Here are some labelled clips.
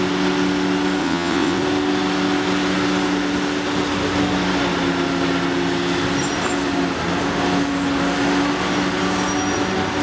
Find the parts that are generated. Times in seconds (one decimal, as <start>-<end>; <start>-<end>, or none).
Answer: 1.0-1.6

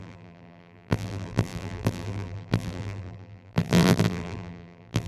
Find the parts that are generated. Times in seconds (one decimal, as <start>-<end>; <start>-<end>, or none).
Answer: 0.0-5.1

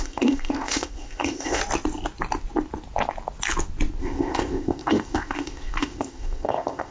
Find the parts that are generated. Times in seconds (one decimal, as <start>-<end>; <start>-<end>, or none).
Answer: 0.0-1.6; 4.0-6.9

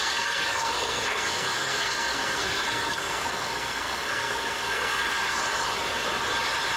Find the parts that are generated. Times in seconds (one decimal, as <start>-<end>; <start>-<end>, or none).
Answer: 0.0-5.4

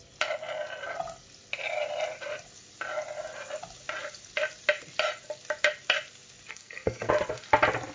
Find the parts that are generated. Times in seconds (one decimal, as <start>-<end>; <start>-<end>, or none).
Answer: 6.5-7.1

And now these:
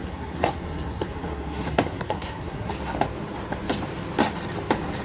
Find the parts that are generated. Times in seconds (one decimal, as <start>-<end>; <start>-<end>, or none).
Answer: 0.0-2.7

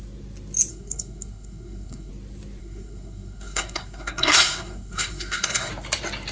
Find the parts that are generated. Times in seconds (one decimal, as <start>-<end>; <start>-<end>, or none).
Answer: 0.7-2.1; 2.6-5.7

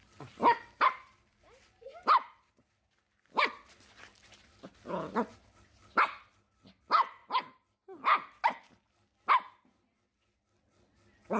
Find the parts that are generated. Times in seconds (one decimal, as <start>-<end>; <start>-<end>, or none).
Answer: none